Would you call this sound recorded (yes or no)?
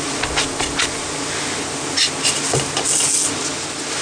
yes